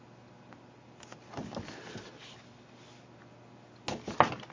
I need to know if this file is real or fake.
real